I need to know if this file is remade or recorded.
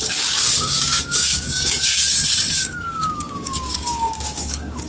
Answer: remade